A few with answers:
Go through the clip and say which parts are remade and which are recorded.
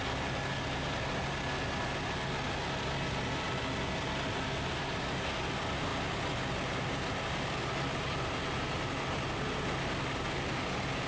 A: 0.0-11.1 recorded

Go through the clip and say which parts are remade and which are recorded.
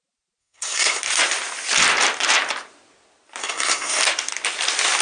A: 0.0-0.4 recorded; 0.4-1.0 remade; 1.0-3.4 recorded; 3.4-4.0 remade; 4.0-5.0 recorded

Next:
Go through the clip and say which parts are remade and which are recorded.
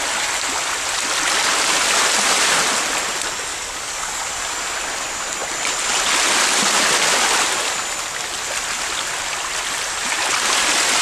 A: 0.0-3.5 recorded; 3.5-4.3 remade; 4.3-11.0 recorded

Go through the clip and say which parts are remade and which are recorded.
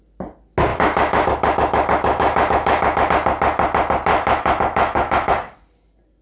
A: 0.0-0.7 recorded; 0.7-3.1 remade; 3.1-4.1 recorded; 4.1-5.3 remade; 5.3-6.2 recorded